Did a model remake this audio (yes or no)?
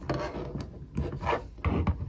no